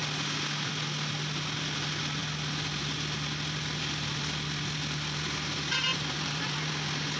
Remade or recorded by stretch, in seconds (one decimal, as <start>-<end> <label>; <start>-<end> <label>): 0.0-5.9 recorded; 5.9-6.7 remade; 6.7-7.2 recorded